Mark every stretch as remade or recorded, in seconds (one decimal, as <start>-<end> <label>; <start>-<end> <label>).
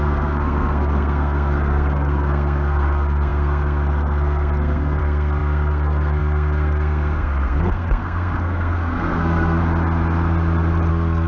0.0-9.6 remade; 9.6-10.9 recorded; 10.9-11.3 remade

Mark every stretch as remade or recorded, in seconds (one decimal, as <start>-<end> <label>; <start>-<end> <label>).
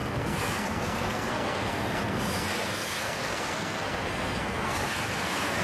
0.0-5.6 remade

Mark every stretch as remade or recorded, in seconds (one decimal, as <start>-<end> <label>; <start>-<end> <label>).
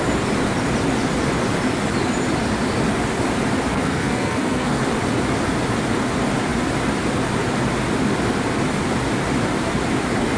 0.0-3.7 recorded; 3.7-4.8 remade; 4.8-10.4 recorded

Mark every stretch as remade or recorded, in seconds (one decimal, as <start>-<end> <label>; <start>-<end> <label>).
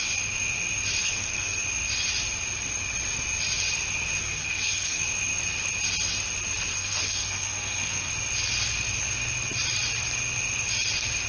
0.0-1.0 recorded; 1.0-1.6 remade; 1.6-4.2 recorded; 4.2-5.0 remade; 5.0-6.7 recorded; 6.7-8.1 remade; 8.1-11.3 recorded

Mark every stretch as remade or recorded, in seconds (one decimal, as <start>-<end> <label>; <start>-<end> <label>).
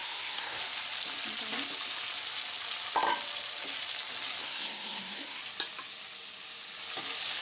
0.0-0.6 remade; 0.6-4.4 recorded; 4.4-5.4 remade; 5.4-7.4 recorded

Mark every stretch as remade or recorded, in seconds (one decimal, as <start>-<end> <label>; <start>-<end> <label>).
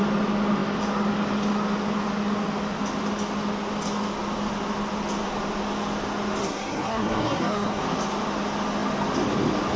0.0-6.4 recorded; 6.4-7.8 remade; 7.8-9.8 recorded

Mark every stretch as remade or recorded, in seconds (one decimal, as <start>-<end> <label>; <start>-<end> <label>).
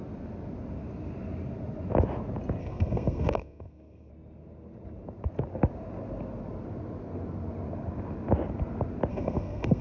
0.0-2.6 recorded; 2.6-4.1 remade; 4.1-9.1 recorded; 9.1-9.8 remade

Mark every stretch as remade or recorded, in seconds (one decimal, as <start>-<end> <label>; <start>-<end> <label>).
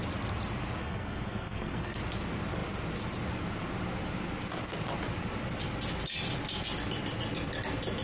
0.0-0.8 recorded; 0.8-2.0 remade; 2.0-8.0 recorded